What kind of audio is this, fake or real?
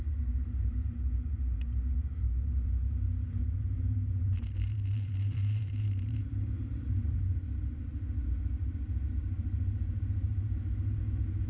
fake